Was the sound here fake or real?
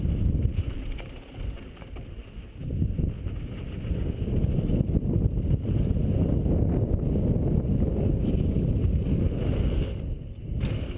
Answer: real